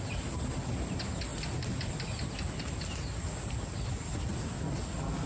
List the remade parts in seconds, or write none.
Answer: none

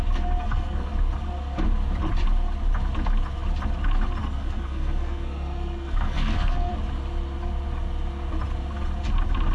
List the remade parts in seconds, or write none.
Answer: 0.4-0.9; 4.2-6.7